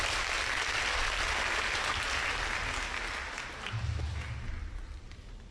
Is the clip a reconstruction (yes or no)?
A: no